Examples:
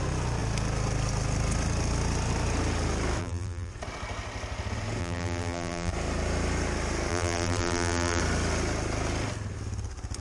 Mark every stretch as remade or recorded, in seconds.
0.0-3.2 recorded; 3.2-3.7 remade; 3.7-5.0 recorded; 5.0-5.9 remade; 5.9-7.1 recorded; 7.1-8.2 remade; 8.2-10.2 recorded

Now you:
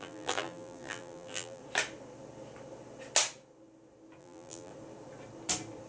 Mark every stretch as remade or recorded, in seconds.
0.0-1.6 remade; 1.6-4.2 recorded; 4.2-4.7 remade; 4.7-5.9 recorded

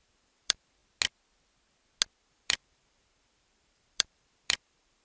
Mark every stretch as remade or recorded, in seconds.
0.0-0.8 remade; 0.8-2.2 recorded; 2.2-5.0 remade